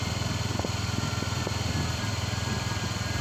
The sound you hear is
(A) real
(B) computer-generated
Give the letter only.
A